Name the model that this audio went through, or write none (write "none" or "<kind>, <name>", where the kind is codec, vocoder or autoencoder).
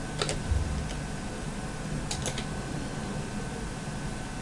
none